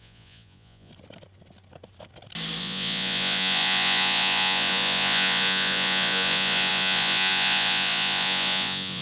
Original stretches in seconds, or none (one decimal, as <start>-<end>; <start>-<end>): 0.9-2.6